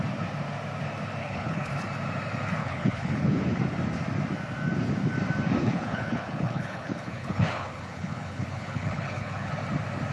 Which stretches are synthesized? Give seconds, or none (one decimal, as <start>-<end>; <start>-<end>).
1.2-1.7; 2.6-3.6; 5.6-9.5